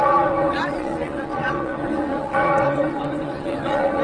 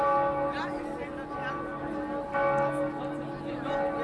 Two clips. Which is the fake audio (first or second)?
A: first